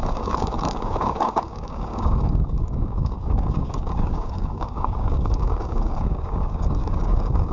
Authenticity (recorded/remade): remade